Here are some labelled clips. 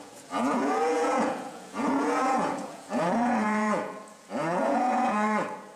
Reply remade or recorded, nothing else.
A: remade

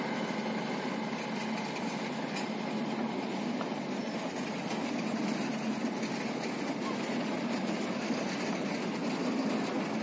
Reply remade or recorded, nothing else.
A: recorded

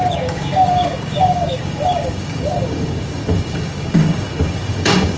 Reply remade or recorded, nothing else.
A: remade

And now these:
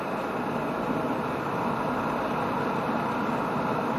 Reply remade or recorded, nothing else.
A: recorded